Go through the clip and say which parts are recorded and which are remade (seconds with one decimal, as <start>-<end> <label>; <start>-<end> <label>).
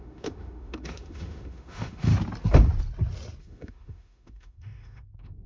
0.0-2.1 remade; 2.1-3.4 recorded; 3.4-5.5 remade